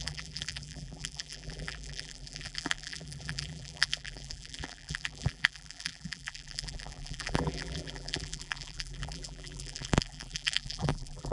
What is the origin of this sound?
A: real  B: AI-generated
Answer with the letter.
B